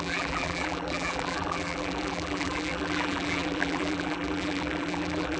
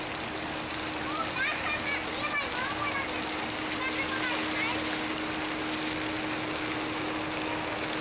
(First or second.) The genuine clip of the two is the second